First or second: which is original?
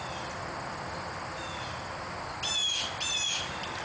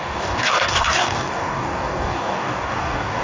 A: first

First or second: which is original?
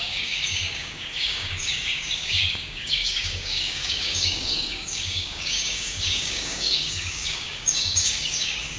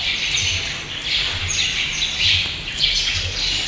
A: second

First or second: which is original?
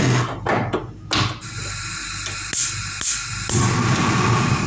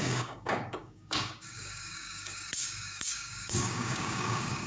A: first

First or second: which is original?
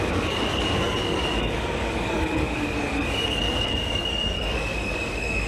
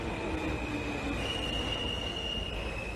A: second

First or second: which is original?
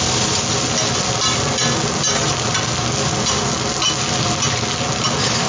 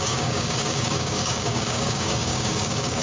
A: first